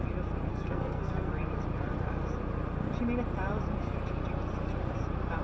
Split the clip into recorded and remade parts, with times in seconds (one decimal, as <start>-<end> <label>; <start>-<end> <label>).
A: 0.0-0.5 recorded; 0.5-1.3 remade; 1.3-5.4 recorded